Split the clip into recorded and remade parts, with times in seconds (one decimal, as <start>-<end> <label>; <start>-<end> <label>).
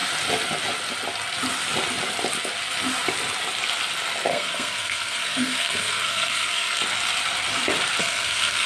0.0-4.3 recorded; 4.3-6.8 remade; 6.8-8.0 recorded; 8.0-8.7 remade